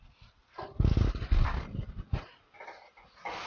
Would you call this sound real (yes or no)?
yes